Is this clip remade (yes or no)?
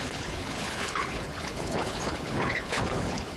yes